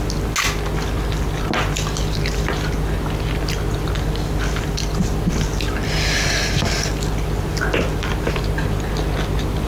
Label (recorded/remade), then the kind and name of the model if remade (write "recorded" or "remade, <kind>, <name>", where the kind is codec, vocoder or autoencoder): recorded